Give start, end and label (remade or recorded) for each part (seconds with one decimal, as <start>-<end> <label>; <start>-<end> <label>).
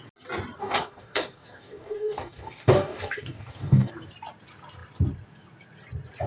0.0-0.6 recorded; 0.6-3.9 remade; 3.9-6.3 recorded